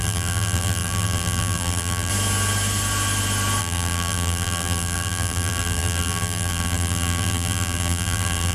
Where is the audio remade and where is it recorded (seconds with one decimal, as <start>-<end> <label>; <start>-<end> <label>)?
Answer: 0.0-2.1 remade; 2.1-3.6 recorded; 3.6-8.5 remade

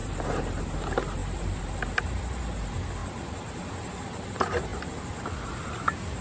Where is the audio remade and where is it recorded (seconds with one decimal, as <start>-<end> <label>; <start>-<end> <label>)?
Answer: 0.0-0.6 remade; 0.6-1.2 recorded; 1.2-2.2 remade; 2.2-3.0 recorded; 3.0-3.8 remade; 3.8-6.2 recorded

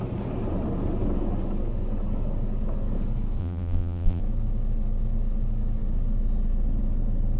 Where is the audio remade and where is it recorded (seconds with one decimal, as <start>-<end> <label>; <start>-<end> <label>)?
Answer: 0.0-3.4 recorded; 3.4-4.2 remade; 4.2-7.4 recorded